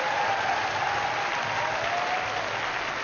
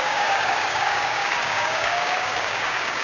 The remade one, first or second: second